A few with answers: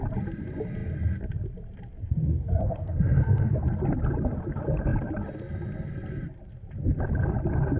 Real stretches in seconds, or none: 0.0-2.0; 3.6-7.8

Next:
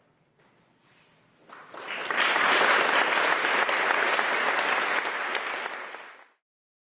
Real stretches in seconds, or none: 0.0-6.9